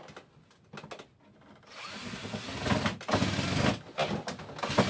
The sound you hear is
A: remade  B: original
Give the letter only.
B